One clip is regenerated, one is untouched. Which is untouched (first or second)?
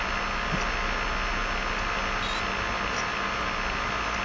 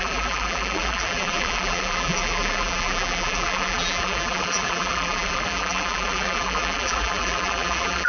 first